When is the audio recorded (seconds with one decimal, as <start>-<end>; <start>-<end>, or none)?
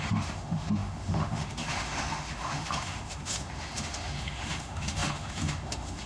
none